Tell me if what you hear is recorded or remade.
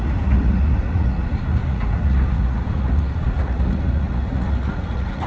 remade